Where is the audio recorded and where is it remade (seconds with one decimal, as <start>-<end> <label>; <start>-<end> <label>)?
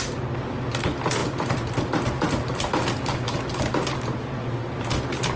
0.0-5.4 recorded